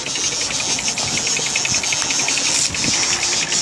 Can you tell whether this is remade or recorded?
recorded